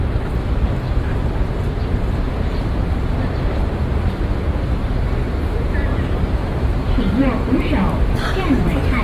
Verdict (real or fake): fake